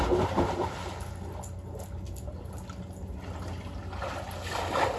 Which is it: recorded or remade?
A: recorded